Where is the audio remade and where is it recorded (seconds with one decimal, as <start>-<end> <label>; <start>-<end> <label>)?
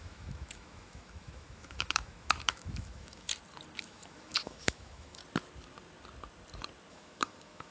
0.0-3.3 remade; 3.3-3.8 recorded; 3.8-5.2 remade; 5.2-6.9 recorded; 6.9-7.7 remade